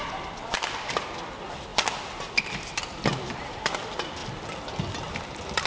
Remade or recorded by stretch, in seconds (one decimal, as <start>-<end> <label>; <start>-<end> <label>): 0.0-5.7 recorded